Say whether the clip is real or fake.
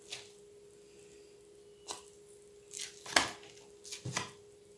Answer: real